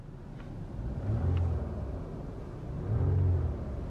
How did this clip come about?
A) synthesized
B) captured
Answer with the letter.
B